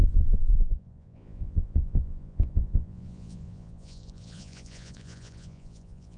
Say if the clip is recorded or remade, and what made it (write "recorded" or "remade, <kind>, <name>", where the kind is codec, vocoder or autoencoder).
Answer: remade, vocoder, Vocos